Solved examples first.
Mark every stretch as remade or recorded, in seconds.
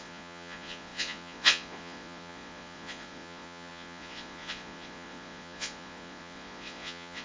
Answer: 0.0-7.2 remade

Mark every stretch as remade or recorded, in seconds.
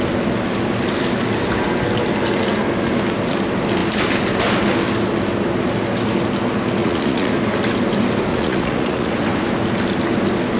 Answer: 0.0-6.8 recorded; 6.8-7.3 remade; 7.3-8.3 recorded; 8.3-9.2 remade; 9.2-10.6 recorded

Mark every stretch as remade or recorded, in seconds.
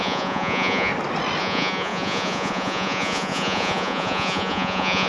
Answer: 0.0-0.9 remade; 0.9-1.4 recorded; 1.4-5.1 remade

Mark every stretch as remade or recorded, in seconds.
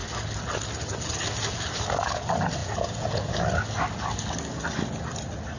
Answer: 0.0-2.6 recorded; 2.6-3.3 remade; 3.3-5.6 recorded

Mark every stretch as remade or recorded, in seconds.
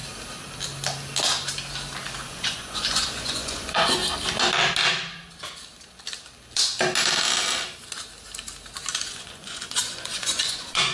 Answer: 0.0-2.2 recorded; 2.2-4.0 remade; 4.0-9.0 recorded; 9.0-10.9 remade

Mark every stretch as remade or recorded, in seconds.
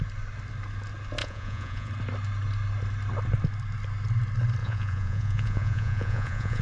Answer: 0.0-1.2 recorded; 1.2-1.9 remade; 1.9-4.6 recorded; 4.6-6.6 remade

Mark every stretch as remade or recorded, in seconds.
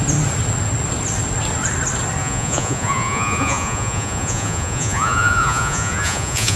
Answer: 0.0-2.2 recorded; 2.2-6.6 remade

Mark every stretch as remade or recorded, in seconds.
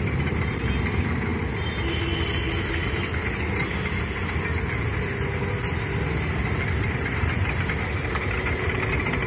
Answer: 0.0-9.3 recorded